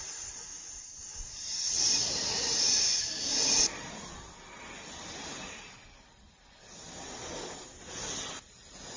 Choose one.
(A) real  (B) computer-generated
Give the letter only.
A